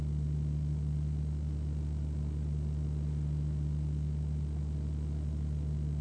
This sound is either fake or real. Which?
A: real